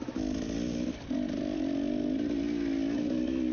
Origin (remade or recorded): recorded